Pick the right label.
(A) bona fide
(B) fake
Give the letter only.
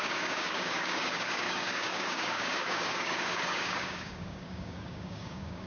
B